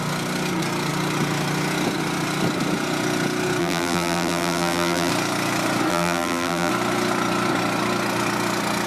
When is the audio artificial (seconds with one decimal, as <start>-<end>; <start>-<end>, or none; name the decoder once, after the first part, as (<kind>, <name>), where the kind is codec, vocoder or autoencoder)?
3.6-5.1 (vocoder, BigVGAN v2); 5.9-6.7